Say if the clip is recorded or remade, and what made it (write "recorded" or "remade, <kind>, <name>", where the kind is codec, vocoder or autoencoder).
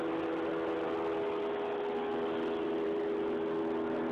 recorded